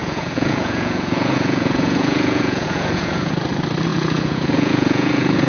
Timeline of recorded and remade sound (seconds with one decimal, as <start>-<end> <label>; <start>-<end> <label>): 0.0-3.3 remade; 3.3-3.9 recorded; 3.9-5.5 remade